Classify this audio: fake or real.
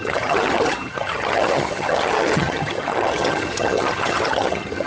fake